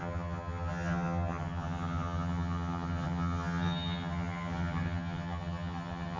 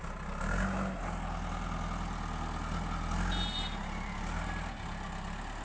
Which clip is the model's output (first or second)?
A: first